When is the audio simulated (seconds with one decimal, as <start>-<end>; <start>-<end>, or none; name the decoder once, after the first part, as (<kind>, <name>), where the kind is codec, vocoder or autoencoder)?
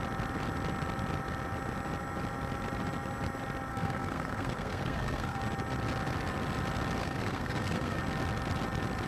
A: 3.7-5.4 (codec, SNAC); 7.0-8.0